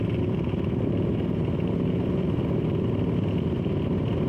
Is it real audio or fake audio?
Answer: real